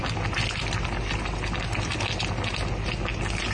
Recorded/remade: recorded